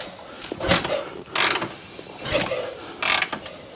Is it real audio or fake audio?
real